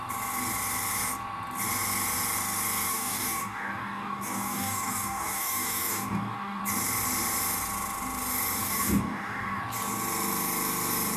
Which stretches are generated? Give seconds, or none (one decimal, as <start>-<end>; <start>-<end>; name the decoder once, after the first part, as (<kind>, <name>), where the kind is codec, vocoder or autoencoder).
2.9-6.6 (codec, DAC); 8.6-9.6